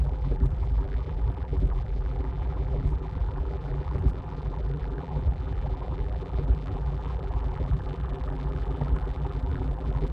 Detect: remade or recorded remade